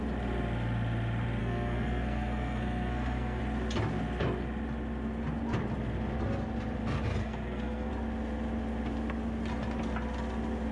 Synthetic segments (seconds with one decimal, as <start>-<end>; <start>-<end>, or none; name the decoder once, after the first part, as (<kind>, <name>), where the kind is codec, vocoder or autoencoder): 1.4-3.4 (codec, SNAC); 7.2-7.9

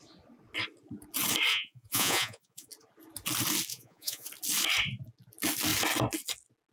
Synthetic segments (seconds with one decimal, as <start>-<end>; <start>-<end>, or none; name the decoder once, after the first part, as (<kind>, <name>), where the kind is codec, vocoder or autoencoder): 1.5-2.7 (vocoder, Vocos); 3.7-4.3

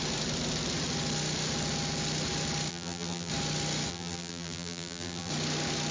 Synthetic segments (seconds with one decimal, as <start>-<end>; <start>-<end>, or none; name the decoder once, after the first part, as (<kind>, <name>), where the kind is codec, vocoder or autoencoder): 2.7-3.3 (vocoder, BigVGAN v2); 3.9-5.3